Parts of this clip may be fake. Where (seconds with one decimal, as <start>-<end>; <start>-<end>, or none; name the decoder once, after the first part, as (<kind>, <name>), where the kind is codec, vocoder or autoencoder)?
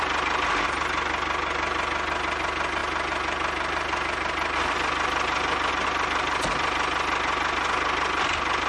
none